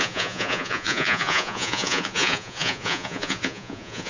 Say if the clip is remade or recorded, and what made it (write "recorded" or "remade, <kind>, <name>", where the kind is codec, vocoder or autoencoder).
remade, vocoder, Vocos